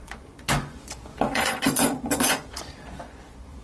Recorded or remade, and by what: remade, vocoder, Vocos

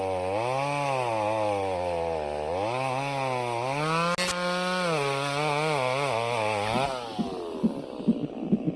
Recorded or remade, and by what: recorded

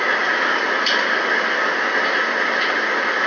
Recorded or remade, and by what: recorded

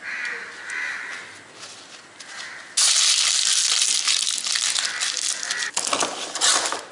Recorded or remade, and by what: recorded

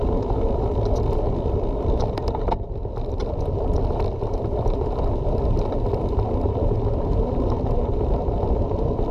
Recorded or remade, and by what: remade, vocoder, BigVGAN v2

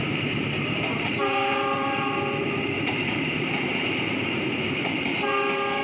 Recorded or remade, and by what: remade, vocoder, BigVGAN v2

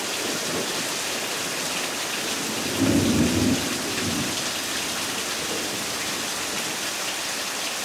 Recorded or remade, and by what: recorded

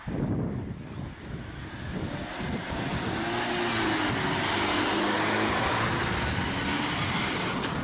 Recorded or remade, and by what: recorded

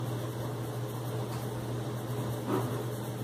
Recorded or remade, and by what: recorded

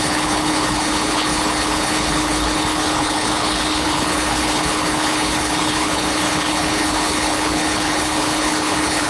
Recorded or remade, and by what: remade, codec, HILCodec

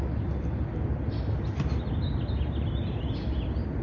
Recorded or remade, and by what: recorded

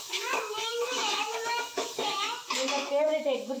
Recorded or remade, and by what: remade, autoencoder, DAC-VAE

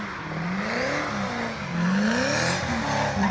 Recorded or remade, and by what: recorded